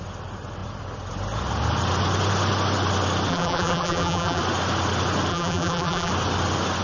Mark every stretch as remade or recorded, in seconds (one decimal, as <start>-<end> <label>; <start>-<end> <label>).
0.0-3.3 recorded; 3.3-4.4 remade; 4.4-5.3 recorded; 5.3-6.1 remade; 6.1-6.8 recorded